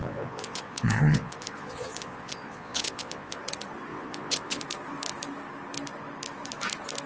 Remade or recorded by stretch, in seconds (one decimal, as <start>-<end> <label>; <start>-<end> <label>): 0.0-3.4 remade; 3.4-3.9 recorded; 3.9-4.6 remade; 4.6-7.1 recorded